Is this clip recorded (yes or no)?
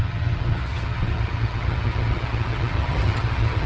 no